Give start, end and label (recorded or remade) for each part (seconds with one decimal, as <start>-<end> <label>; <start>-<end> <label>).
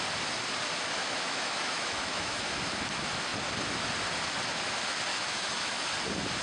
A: 0.0-1.0 recorded; 1.0-2.5 remade; 2.5-5.1 recorded; 5.1-5.9 remade; 5.9-6.4 recorded